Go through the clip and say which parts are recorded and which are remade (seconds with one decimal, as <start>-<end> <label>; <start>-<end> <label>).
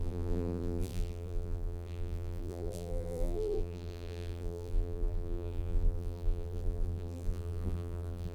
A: 0.0-8.3 remade